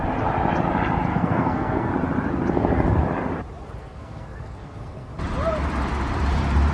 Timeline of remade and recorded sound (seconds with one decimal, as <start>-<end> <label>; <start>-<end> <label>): 0.0-1.1 recorded; 1.1-1.9 remade; 1.9-3.8 recorded; 3.8-5.1 remade; 5.1-6.7 recorded